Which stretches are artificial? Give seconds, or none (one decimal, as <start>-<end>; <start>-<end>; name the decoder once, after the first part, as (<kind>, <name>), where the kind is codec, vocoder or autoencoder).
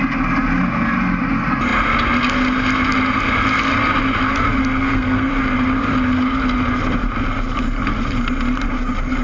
4.6-5.3 (codec, SNAC)